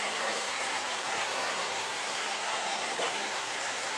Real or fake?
fake